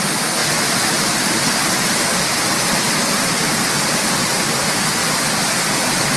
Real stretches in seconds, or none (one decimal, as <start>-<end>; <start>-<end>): 0.0-5.0; 5.5-6.2